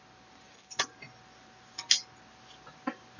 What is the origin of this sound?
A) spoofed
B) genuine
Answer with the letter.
B